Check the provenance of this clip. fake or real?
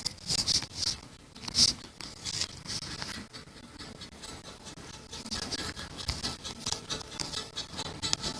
real